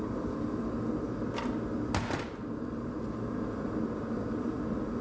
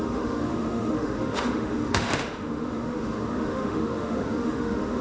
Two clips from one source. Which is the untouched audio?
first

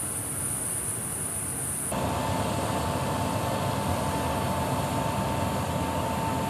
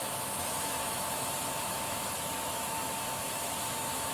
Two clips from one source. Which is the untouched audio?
first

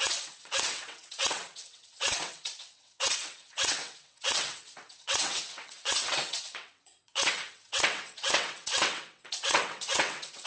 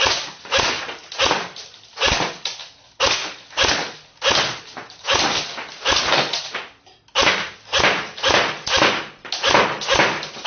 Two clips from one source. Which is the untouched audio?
second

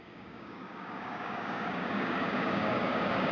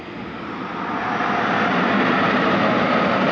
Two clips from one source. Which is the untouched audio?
second